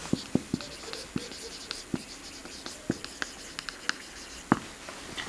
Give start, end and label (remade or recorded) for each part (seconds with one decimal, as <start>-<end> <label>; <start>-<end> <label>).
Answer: 0.0-5.3 recorded